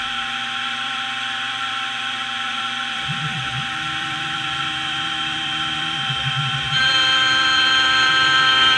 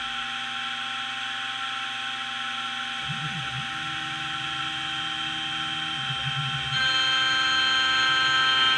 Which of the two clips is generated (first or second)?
first